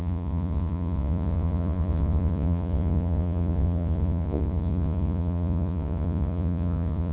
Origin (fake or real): fake